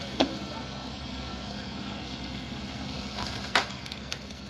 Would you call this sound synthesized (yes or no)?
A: yes